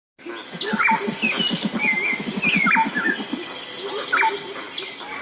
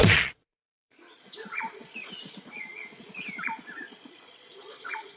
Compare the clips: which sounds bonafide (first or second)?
first